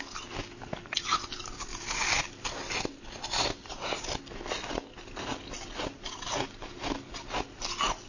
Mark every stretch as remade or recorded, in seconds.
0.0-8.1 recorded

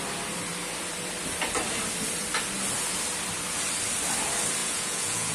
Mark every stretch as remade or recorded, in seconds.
0.0-4.6 recorded; 4.6-5.3 remade

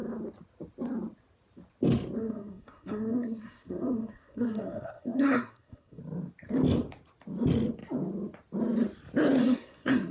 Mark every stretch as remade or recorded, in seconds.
0.0-2.2 recorded; 2.2-6.0 remade; 6.0-9.4 recorded; 9.4-10.1 remade

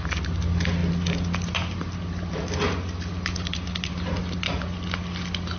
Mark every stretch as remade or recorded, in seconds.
0.0-5.6 recorded

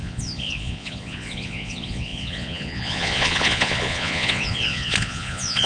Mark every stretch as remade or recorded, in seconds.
0.0-5.7 remade